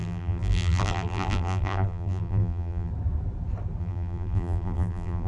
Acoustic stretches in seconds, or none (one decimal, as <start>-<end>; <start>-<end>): 2.9-3.8